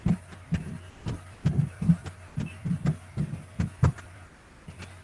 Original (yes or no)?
no